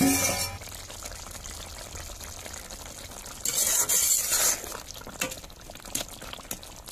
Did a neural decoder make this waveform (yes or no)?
no